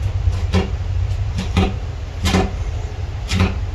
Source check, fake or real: real